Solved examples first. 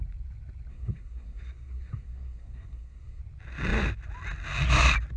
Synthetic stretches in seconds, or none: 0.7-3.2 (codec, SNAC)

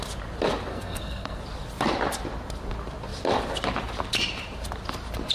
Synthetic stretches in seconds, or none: 0.7-1.4 (codec, SNAC)

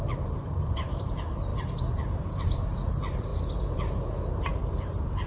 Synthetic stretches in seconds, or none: 0.0-1.5 (vocoder, BigVGAN v2); 2.9-5.3

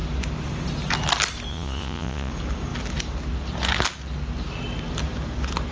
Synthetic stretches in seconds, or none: 1.5-2.3 (vocoder, Vocos)

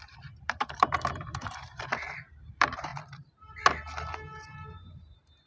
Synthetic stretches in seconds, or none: 0.0-2.9 (vocoder, BigVGAN v2)

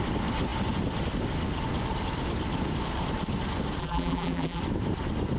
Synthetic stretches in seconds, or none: 3.8-4.6 (vocoder, BigVGAN v2)

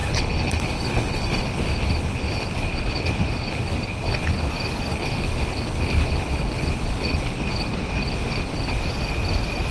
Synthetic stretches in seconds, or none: 0.0-4.5 (codec, HILCodec); 4.9-8.8